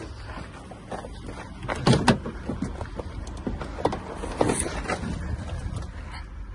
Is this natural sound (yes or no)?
yes